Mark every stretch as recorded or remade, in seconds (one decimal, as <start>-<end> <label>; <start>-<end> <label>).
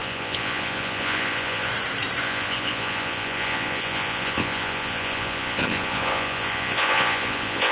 0.0-1.7 remade; 1.7-2.2 recorded; 2.2-7.7 remade